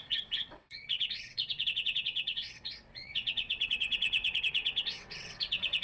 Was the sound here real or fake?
fake